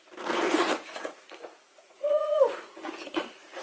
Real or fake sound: fake